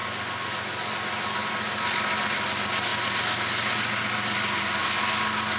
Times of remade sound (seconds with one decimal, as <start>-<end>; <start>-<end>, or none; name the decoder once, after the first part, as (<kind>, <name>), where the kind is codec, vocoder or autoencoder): none